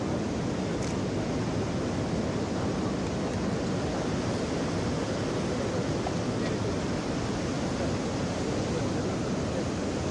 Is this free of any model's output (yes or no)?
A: yes